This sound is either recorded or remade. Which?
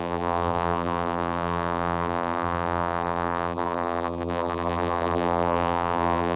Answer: remade